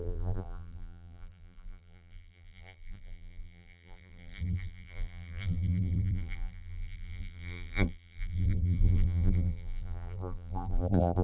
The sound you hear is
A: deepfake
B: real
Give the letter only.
A